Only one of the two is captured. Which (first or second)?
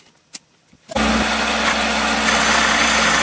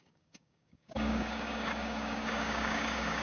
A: first